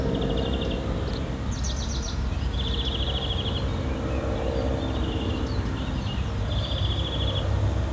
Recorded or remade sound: recorded